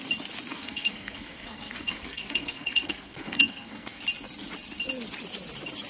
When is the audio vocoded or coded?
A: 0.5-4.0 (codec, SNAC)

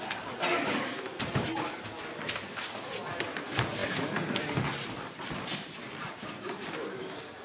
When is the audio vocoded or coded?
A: none

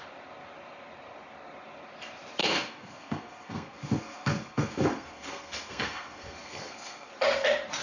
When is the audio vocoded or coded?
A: 2.4-7.1 (codec, SNAC)

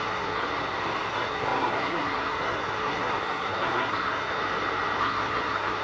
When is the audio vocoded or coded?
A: 0.0-0.5 (codec, SNAC); 1.1-4.4; 5.0-5.8

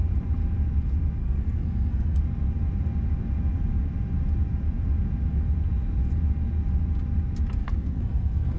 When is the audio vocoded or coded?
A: 1.2-2.2 (codec, SNAC); 7.6-8.6